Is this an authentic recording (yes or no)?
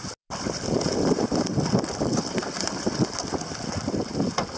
yes